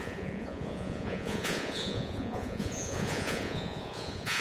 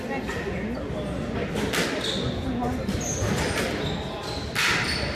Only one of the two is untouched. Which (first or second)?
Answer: second